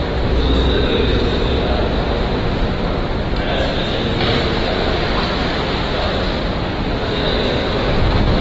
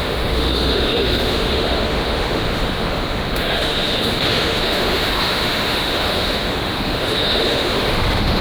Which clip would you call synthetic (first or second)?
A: second